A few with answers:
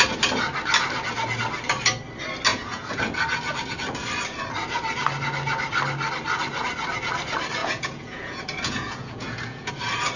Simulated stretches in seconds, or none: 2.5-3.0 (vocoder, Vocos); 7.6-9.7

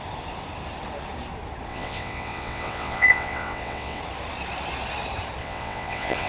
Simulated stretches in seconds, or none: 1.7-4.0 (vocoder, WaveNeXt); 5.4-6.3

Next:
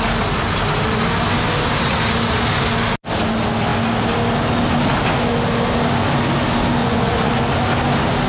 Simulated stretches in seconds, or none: 6.8-7.3 (vocoder, Vocos)

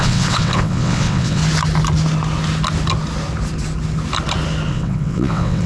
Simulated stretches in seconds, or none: 0.0-1.4 (vocoder, WaveNeXt); 4.7-5.7

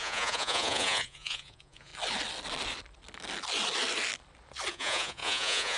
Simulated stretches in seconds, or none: 0.0-1.9 (vocoder, Vocos); 4.7-5.8

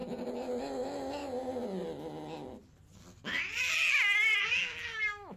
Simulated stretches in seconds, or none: 0.6-1.2 (autoencoder, DAC-VAE); 4.4-5.4

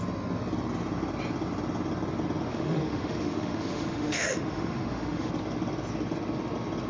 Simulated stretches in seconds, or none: 2.5-5.3 (autoencoder, DAC-VAE)

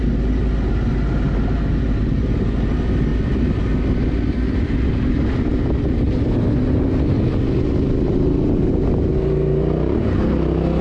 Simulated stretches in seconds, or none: none